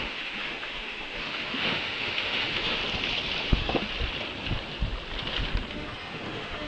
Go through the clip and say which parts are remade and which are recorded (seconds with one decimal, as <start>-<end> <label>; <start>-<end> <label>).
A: 0.0-2.8 remade; 2.8-3.4 recorded; 3.4-3.9 remade; 3.9-5.7 recorded; 5.7-6.7 remade